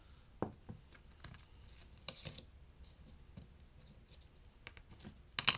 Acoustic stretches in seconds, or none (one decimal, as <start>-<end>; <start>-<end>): 0.0-5.6